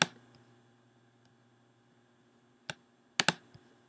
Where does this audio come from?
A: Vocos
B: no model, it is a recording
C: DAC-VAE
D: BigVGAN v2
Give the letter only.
B